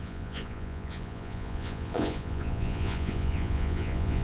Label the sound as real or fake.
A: fake